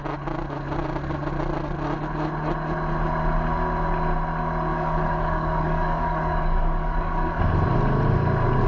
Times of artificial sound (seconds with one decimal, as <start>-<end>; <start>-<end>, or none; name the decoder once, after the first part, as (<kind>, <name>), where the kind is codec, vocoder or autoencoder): 4.7-7.4 (codec, DAC)